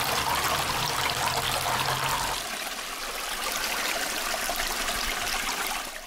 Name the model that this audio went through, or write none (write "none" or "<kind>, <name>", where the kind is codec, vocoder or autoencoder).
none